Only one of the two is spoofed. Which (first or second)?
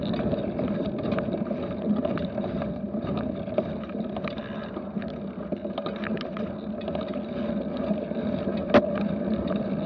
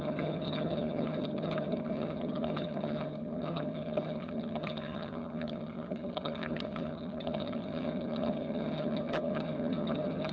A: second